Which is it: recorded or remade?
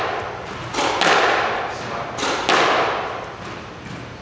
recorded